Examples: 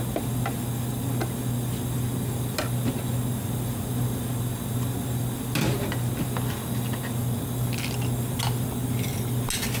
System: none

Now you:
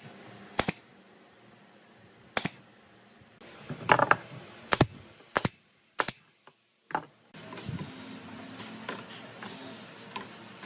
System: none